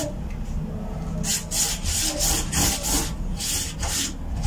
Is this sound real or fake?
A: real